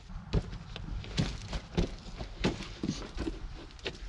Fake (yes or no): no